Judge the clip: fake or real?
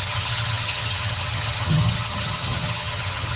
fake